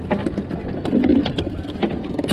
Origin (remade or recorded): recorded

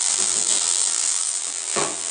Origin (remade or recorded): remade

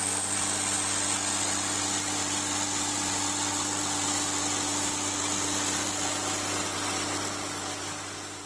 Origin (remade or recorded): recorded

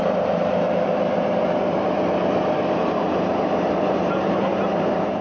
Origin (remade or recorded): remade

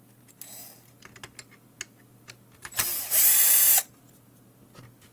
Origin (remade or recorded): recorded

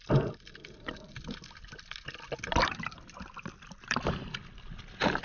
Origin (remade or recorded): remade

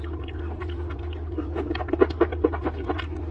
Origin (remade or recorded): remade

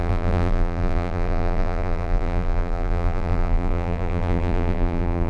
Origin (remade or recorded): remade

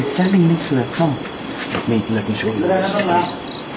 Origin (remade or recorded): recorded